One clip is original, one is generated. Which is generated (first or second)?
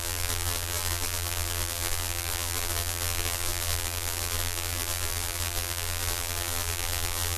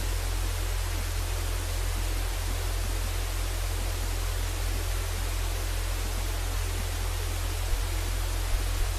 first